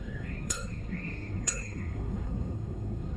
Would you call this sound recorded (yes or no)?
no